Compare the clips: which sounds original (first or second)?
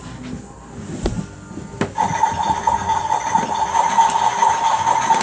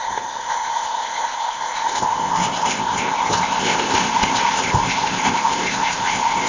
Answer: first